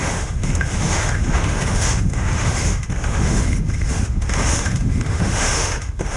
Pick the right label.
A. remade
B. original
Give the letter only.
A